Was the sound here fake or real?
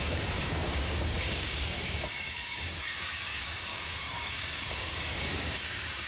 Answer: fake